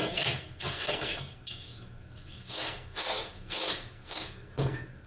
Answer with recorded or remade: remade